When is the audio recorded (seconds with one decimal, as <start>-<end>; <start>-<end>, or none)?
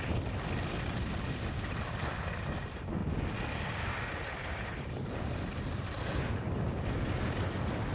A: 0.0-7.9